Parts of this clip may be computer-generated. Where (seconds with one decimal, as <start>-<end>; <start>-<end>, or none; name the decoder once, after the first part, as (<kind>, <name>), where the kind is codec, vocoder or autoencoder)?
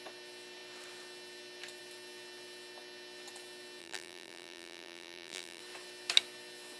3.8-5.6 (vocoder, BigVGAN v2)